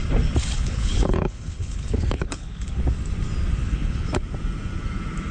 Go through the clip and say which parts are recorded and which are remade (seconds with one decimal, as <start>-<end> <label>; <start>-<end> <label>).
0.0-0.4 recorded; 0.4-2.8 remade; 2.8-3.6 recorded; 3.6-4.1 remade; 4.1-5.3 recorded